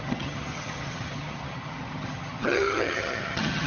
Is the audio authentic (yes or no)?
no